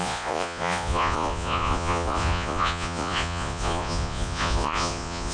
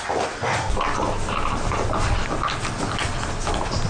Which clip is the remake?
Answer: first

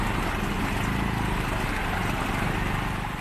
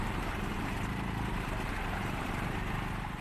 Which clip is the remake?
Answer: second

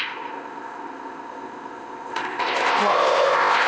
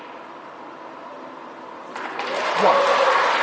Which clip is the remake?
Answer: first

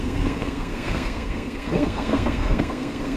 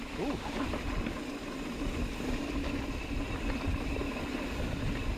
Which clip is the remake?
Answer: first